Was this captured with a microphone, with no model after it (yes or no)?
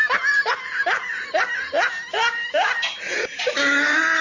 yes